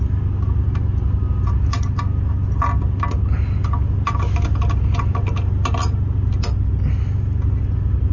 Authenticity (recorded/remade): recorded